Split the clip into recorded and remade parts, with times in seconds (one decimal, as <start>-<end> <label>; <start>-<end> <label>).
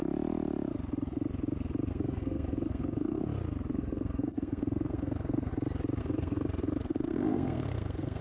0.0-1.9 recorded; 1.9-3.2 remade; 3.2-3.7 recorded; 3.7-5.5 remade; 5.5-6.0 recorded; 6.0-8.2 remade